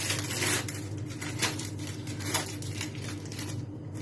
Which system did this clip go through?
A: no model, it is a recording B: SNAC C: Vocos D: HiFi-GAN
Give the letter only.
A